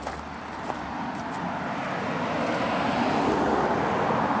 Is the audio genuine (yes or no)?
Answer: yes